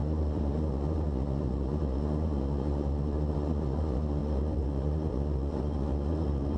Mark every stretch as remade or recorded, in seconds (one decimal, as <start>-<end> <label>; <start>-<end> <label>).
0.0-6.6 remade